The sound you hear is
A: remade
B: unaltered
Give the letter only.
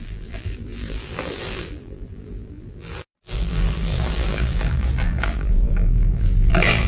A